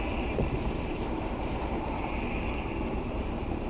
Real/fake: fake